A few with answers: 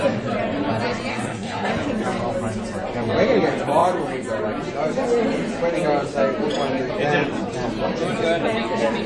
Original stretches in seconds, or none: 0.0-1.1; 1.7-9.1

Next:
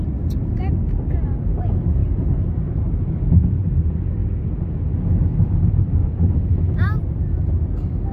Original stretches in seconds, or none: 0.0-8.1

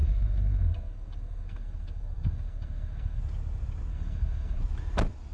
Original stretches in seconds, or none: 3.2-3.9; 4.6-5.3

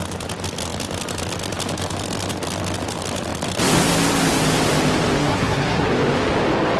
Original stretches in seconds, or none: 0.0-5.2; 5.9-6.8

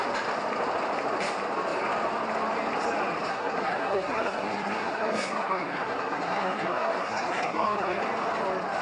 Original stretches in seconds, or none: 0.0-3.3; 8.0-8.8

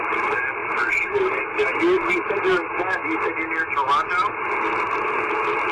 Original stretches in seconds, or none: 0.0-5.7

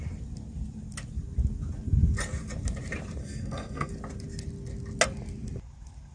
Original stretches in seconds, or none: 0.0-3.2; 3.9-6.1